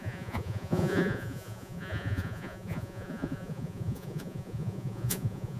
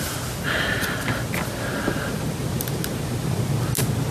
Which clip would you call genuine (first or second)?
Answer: second